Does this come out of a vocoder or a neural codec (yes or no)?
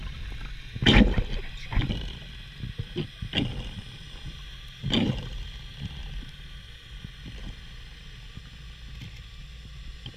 no